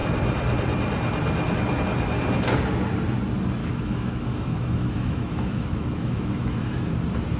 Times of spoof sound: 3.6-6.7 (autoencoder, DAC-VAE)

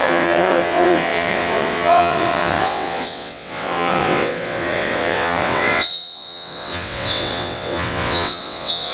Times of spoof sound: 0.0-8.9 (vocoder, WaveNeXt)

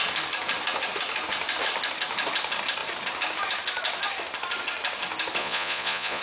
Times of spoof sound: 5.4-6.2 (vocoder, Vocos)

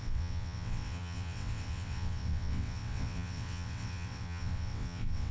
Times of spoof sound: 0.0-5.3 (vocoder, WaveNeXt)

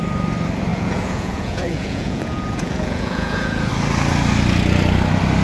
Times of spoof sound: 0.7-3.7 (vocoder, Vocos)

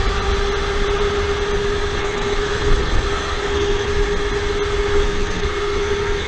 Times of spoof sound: 2.0-3.9 (codec, SNAC); 4.9-6.3

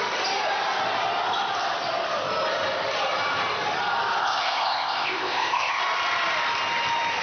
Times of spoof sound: 4.2-5.8 (codec, ZipCodec)